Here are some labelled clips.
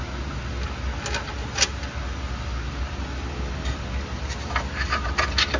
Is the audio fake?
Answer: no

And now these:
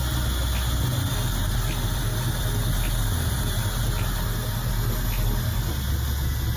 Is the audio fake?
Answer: no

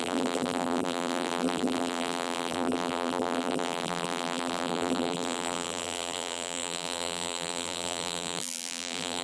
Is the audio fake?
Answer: yes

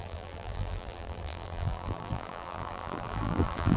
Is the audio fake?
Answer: yes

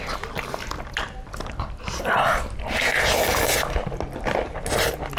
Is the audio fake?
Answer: no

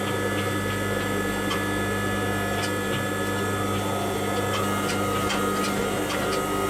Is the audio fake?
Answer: no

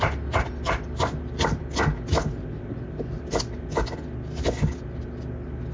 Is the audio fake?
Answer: no